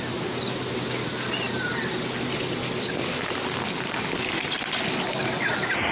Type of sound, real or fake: real